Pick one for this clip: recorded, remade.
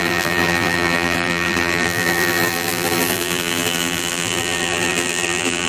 remade